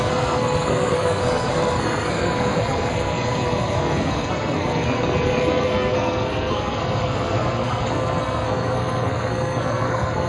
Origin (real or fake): fake